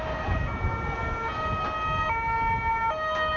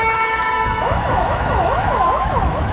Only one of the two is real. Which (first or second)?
first